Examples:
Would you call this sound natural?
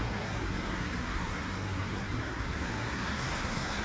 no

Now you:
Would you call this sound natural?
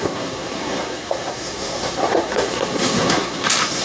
no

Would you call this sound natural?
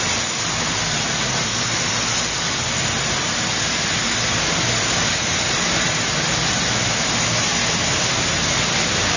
yes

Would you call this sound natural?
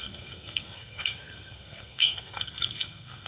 no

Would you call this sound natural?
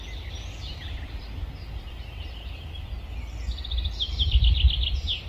yes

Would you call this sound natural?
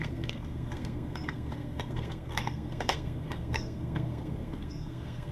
no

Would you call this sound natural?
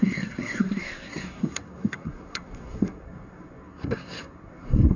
no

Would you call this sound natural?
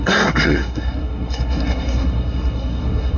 no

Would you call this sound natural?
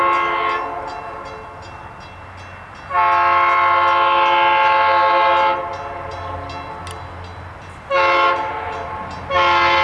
yes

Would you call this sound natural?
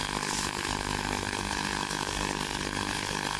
no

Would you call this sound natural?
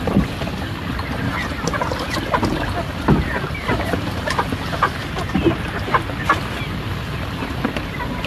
yes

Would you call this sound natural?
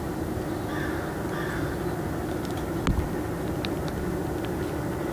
yes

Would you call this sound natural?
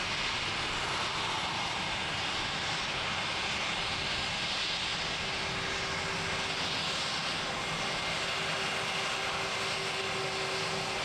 yes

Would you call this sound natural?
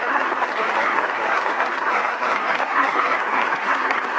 no